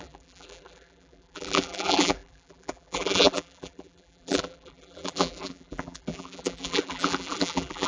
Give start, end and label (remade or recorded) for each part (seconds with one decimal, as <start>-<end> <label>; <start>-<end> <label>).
0.0-7.9 remade